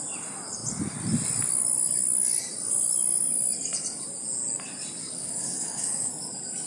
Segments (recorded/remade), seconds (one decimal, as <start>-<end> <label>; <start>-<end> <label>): 0.0-5.0 recorded; 5.0-6.1 remade; 6.1-6.7 recorded